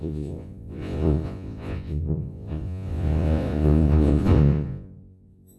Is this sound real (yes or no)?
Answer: no